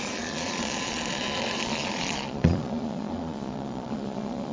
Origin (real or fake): fake